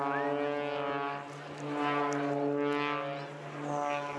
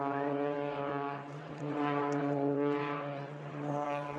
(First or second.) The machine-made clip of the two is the second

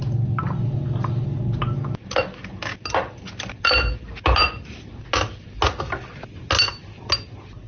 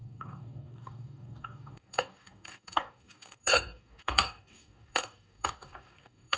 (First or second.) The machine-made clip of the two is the second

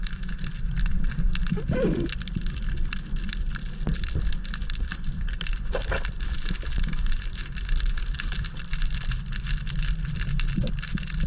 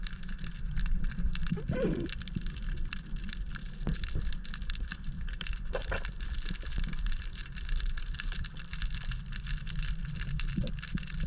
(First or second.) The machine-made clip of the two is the second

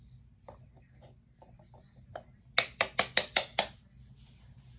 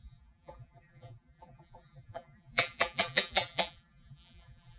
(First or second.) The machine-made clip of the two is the second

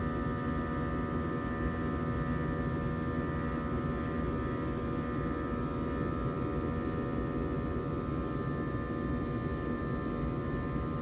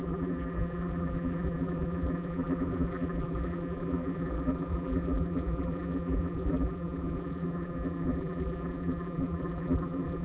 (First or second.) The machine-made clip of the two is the second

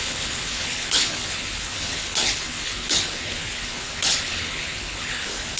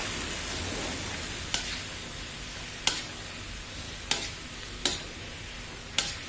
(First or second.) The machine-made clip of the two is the first